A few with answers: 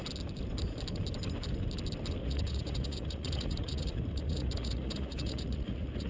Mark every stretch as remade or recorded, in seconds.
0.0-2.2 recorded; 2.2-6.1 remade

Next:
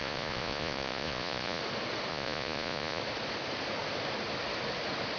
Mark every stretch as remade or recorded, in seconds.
0.0-1.6 remade; 1.6-2.1 recorded; 2.1-3.0 remade; 3.0-5.2 recorded